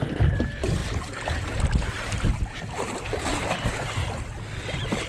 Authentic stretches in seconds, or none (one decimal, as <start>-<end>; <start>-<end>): 0.0-5.1